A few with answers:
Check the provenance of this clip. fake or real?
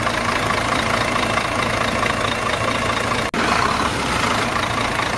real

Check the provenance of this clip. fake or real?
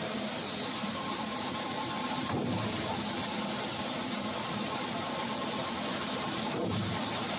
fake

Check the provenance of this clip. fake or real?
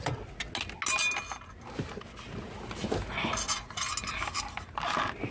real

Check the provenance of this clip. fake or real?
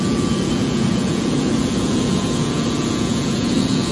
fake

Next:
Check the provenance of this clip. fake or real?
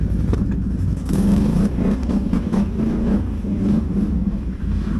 fake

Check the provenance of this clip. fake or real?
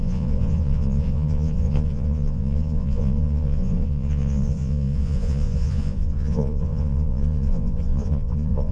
fake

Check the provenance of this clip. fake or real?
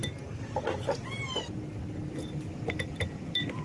real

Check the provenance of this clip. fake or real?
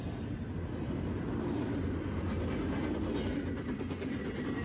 real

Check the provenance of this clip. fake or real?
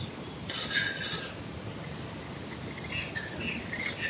real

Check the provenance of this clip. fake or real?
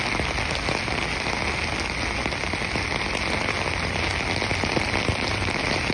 real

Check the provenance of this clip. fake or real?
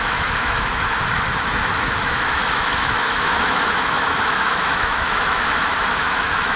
fake